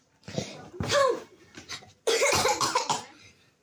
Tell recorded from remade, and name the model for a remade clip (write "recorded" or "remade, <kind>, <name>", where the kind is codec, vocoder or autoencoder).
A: remade, vocoder, BigVGAN v2